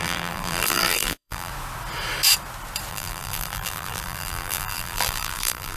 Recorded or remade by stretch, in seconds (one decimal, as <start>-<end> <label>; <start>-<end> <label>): 0.0-1.5 remade; 1.5-2.9 recorded; 2.9-5.8 remade